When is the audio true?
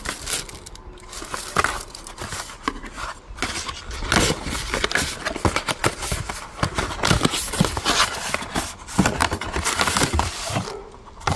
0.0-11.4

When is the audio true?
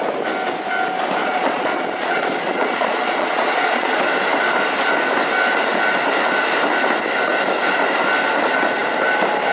0.0-1.2; 3.9-9.5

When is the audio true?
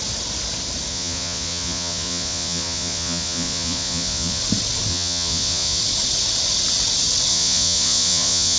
0.0-0.9; 4.4-4.9; 5.8-7.3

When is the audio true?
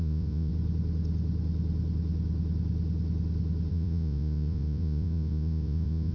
0.5-3.7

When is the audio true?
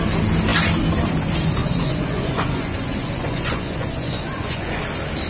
0.0-1.6; 4.8-5.3